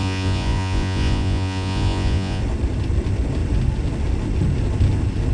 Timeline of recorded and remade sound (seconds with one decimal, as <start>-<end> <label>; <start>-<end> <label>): 0.0-2.4 remade; 2.4-5.3 recorded